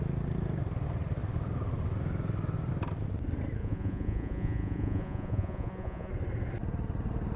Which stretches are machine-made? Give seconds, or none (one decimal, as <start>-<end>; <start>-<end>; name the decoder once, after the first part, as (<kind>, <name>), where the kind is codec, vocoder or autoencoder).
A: 3.6-6.1 (vocoder, Vocos)